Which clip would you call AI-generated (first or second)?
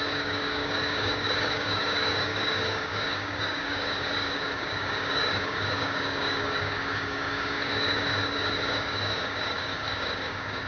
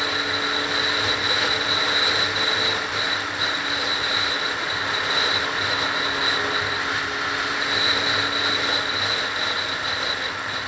first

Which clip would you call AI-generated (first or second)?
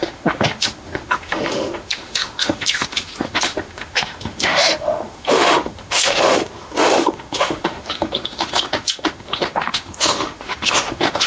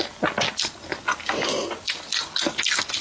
first